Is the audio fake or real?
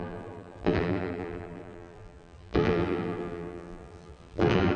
fake